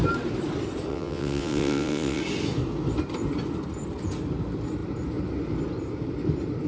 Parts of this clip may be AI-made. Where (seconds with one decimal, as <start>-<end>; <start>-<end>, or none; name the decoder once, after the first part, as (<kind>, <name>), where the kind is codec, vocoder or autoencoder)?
0.9-2.2 (vocoder, WaveNeXt)